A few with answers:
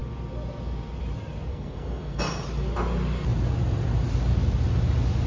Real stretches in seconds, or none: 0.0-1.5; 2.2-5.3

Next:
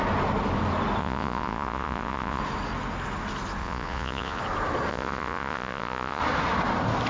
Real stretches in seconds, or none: 0.0-1.0; 2.4-3.6; 4.4-4.9; 6.2-7.1

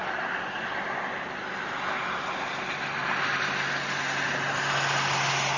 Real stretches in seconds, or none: 0.0-5.6

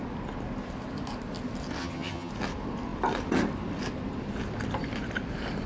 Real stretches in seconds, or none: 0.0-1.8; 2.3-5.7

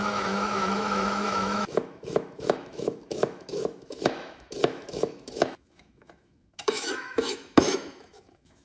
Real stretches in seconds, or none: none

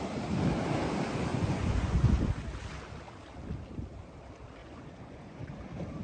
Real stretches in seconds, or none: 0.0-1.3; 2.3-4.6; 5.6-6.0

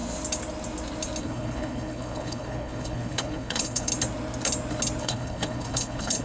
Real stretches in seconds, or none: 0.0-1.2; 3.9-5.0